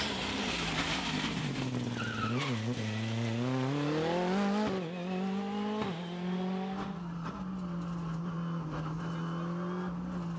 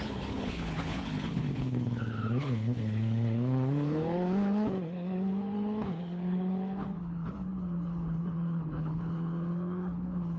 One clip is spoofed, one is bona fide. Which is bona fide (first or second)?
first